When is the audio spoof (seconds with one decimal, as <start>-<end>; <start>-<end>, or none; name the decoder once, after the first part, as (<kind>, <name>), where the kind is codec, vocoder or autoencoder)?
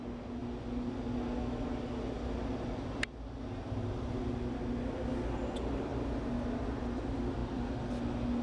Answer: none